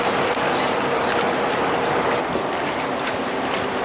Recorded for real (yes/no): yes